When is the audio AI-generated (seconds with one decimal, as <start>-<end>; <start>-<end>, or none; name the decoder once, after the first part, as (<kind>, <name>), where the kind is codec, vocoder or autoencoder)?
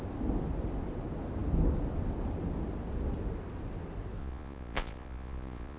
4.2-5.8 (vocoder, Vocos)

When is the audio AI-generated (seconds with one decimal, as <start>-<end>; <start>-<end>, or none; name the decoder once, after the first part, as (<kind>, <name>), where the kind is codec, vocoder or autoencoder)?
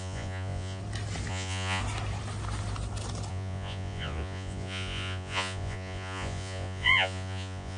0.0-0.8 (vocoder, Vocos); 1.3-1.8; 3.3-7.8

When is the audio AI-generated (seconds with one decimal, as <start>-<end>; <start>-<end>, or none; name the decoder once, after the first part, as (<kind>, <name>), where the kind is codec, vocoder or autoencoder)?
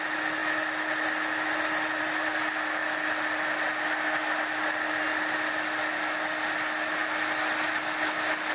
none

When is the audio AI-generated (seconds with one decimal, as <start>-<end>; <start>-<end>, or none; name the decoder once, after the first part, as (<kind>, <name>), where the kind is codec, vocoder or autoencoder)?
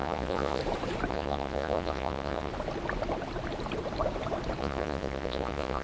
0.0-0.6 (vocoder, Vocos); 1.1-2.5; 4.6-5.8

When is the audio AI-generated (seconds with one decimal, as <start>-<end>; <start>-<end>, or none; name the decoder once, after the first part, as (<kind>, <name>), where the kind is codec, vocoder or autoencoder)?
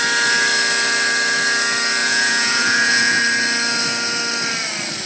2.0-3.2 (vocoder, Vocos)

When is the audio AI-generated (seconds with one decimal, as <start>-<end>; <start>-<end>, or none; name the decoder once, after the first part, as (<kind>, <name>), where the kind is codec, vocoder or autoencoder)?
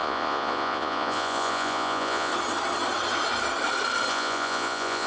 0.0-2.3 (vocoder, Vocos); 4.1-5.1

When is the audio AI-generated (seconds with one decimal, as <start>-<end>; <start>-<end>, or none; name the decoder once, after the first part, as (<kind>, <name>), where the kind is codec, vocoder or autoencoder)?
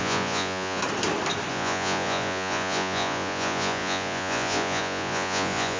0.0-0.8 (vocoder, Vocos); 1.5-5.8